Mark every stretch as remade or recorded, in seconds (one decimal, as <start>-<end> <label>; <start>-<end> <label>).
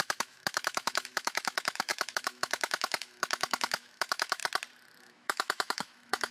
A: 0.0-4.4 remade; 4.4-5.0 recorded; 5.0-6.3 remade